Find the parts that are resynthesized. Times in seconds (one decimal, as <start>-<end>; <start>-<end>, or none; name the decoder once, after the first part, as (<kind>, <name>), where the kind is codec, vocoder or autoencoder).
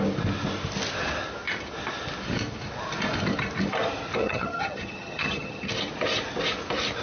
4.2-5.7 (vocoder, HiFi-GAN)